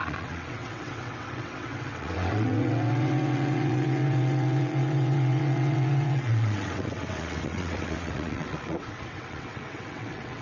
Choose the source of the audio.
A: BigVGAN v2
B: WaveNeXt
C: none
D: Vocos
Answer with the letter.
B